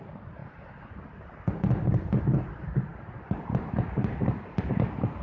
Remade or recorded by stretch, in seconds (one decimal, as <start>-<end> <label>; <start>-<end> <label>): 0.0-0.4 remade; 0.4-2.2 recorded; 2.2-2.9 remade; 2.9-4.5 recorded; 4.5-5.2 remade